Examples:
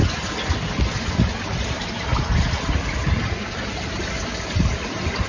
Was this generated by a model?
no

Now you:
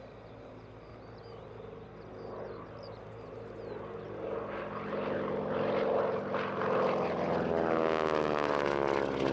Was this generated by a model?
no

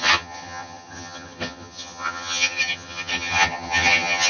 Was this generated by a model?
yes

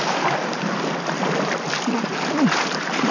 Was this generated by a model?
no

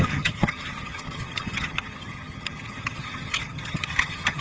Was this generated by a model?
yes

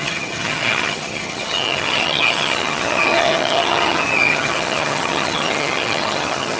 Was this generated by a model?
yes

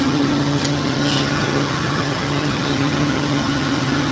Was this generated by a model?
yes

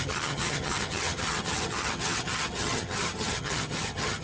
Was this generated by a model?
yes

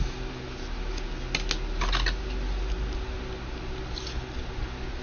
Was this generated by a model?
no